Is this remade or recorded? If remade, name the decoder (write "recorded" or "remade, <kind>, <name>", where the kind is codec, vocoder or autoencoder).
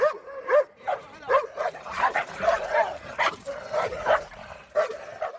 remade, vocoder, BigVGAN v2